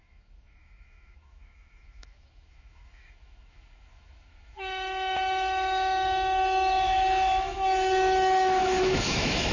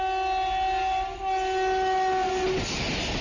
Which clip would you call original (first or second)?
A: second